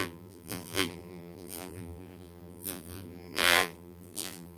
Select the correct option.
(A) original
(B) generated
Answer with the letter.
B